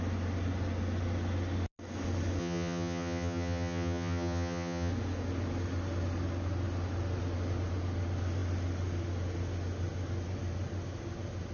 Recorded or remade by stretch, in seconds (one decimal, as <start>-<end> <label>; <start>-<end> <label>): 0.0-2.4 recorded; 2.4-4.9 remade; 4.9-11.5 recorded